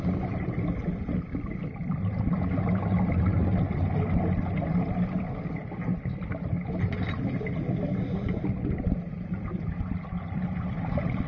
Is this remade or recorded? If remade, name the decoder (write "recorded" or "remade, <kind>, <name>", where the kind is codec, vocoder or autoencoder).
recorded